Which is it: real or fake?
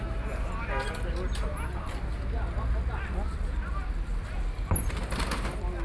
real